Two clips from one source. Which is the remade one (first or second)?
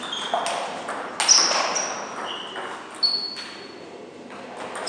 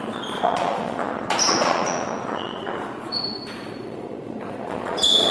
second